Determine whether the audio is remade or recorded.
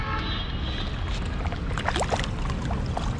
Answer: recorded